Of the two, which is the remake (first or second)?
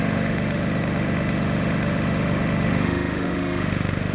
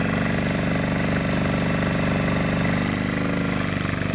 first